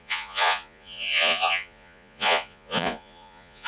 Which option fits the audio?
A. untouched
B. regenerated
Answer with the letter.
B